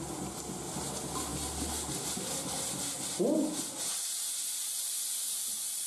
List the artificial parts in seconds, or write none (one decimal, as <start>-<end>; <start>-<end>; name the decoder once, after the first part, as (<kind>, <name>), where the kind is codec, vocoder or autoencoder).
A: none